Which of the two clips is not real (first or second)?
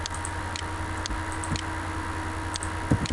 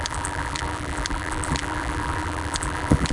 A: second